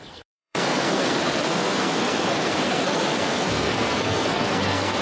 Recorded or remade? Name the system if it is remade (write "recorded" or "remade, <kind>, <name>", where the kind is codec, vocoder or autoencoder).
remade, codec, SNAC